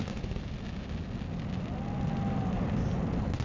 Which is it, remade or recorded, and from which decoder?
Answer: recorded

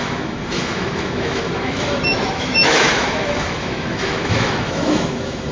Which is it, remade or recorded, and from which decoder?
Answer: remade, autoencoder, DAC-VAE